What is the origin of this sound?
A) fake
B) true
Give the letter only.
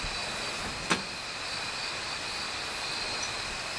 B